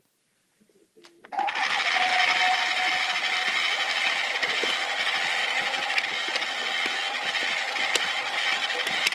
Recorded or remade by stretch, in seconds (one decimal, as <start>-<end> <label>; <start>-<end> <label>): 0.0-9.1 recorded